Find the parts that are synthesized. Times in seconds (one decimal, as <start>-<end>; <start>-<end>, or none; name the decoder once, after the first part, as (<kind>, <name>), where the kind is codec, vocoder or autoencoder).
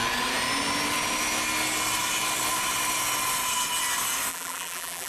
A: 4.3-5.1 (vocoder, BigVGAN v2)